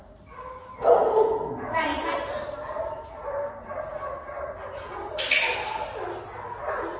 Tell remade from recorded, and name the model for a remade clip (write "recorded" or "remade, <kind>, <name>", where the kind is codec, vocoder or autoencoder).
recorded